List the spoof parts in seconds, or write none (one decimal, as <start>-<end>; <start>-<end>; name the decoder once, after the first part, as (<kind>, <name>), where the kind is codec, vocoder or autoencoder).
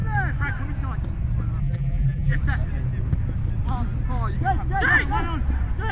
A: 1.6-2.4 (vocoder, BigVGAN v2)